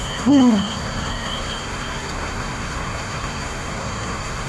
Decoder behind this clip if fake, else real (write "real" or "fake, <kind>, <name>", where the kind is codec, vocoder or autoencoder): fake, codec, SNAC